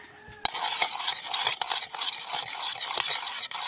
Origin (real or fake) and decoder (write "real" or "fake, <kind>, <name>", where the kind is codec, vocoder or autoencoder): real